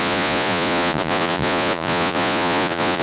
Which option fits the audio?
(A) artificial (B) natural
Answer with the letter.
A